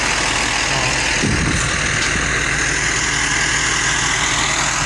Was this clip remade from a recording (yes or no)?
no